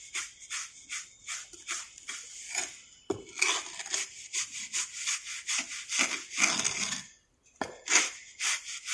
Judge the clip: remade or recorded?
recorded